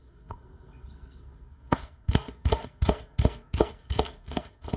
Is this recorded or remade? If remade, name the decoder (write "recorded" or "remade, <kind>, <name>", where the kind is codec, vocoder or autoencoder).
remade, codec, SNAC